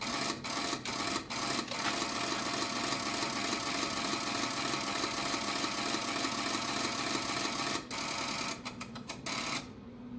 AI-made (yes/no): no